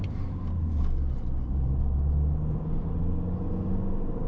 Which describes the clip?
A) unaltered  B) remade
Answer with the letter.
A